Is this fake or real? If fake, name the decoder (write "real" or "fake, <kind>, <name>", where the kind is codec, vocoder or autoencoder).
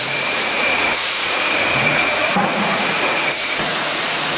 fake, vocoder, Vocos